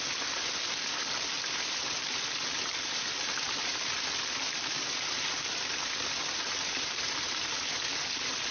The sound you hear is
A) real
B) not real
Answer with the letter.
A